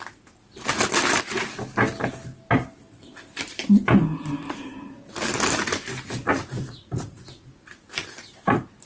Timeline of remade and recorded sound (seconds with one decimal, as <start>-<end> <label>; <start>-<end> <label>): 0.0-6.4 recorded; 6.4-7.5 remade; 7.5-8.9 recorded

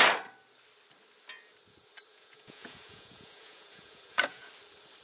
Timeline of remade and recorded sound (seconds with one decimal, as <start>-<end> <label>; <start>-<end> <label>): 0.0-2.1 recorded; 2.1-4.5 remade; 4.5-5.0 recorded

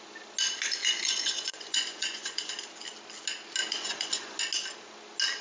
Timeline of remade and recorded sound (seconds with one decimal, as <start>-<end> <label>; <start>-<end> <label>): 0.0-0.8 recorded; 0.8-2.5 remade; 2.5-3.6 recorded; 3.6-4.4 remade; 4.4-5.4 recorded

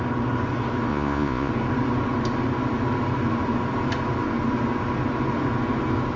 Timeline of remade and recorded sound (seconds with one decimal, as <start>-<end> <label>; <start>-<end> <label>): 0.0-0.9 recorded; 0.9-1.5 remade; 1.5-6.2 recorded